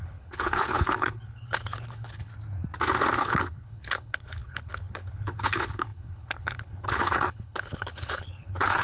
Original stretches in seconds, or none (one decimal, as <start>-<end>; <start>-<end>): 2.3-3.2